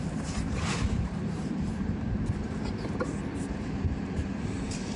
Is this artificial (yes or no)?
yes